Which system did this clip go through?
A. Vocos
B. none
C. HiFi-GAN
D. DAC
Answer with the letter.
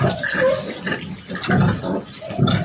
B